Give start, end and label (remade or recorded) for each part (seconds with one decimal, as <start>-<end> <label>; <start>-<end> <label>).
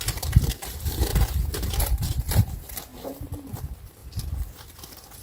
0.0-1.1 remade; 1.1-1.8 recorded; 1.8-2.9 remade; 2.9-3.6 recorded; 3.6-5.2 remade